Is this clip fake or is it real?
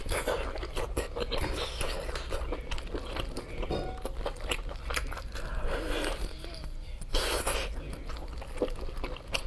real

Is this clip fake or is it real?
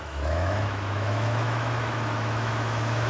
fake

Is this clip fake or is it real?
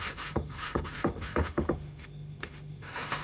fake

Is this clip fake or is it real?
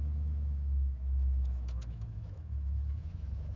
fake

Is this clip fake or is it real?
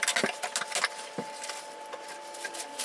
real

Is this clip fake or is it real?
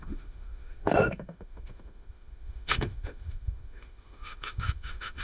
fake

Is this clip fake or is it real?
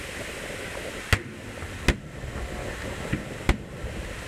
real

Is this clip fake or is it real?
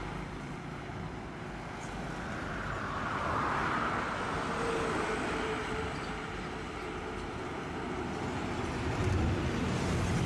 real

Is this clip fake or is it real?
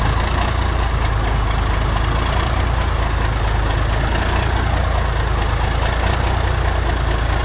real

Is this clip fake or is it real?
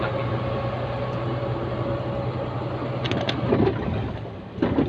real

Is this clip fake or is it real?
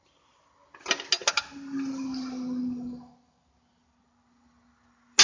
real